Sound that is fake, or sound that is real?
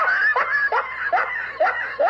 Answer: real